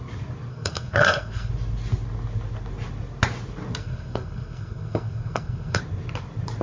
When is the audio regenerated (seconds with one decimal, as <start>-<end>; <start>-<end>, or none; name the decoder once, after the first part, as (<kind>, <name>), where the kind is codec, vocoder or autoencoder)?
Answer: 0.5-1.5 (codec, SNAC); 3.8-5.8